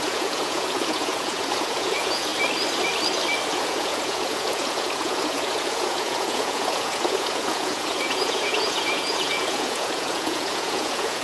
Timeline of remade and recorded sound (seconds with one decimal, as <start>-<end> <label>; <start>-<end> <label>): 0.0-2.3 remade; 2.3-3.5 recorded; 3.5-11.2 remade